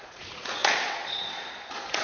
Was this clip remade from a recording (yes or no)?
yes